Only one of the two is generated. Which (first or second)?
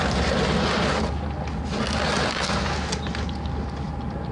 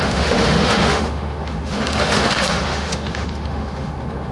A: second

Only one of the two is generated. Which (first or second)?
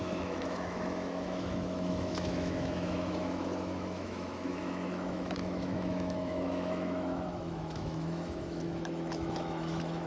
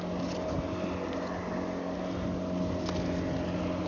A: first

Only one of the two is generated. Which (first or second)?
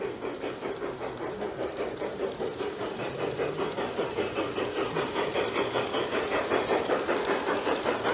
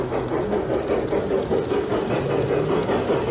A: first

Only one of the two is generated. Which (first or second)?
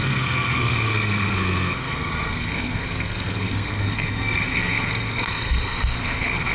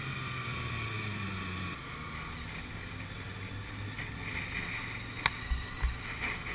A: first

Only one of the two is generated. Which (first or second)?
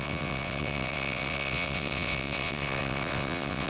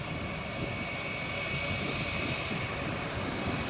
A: first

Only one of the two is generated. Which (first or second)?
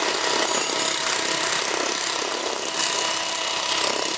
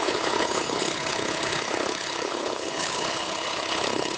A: second